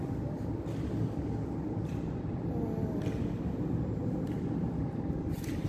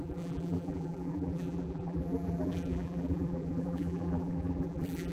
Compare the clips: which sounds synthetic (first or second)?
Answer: second